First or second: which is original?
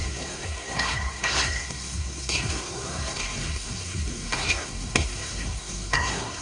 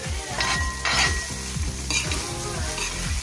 second